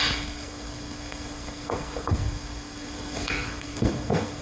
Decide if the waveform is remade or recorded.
remade